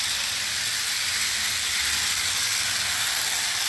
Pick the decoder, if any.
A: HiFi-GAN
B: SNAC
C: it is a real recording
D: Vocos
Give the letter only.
C